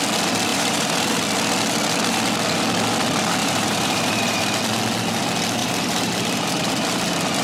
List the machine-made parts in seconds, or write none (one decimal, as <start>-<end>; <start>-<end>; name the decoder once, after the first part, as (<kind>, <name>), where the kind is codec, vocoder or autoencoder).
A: 0.5-1.2 (vocoder, BigVGAN v2); 3.4-4.4; 5.6-6.7